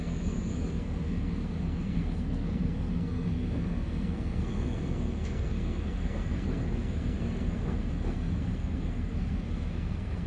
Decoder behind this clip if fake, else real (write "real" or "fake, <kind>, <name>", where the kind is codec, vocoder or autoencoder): fake, codec, SNAC